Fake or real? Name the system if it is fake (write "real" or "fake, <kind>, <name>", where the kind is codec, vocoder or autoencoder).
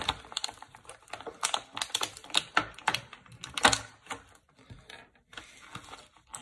real